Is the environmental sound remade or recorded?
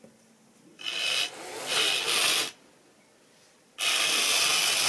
recorded